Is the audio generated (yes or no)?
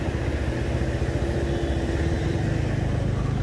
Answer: no